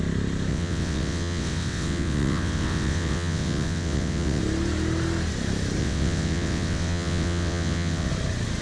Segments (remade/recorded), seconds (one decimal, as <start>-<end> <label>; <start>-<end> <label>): 0.0-0.5 recorded; 0.5-4.4 remade; 4.4-5.8 recorded; 5.8-8.1 remade; 8.1-8.6 recorded